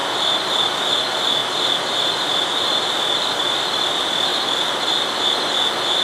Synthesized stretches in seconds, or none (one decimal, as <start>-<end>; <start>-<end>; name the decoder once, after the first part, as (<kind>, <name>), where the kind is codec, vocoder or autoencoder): 0.0-0.5 (vocoder, BigVGAN v2); 4.3-5.3